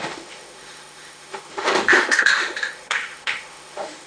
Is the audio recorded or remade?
remade